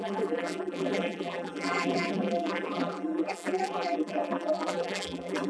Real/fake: fake